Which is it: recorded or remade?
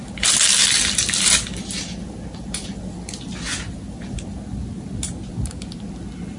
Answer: recorded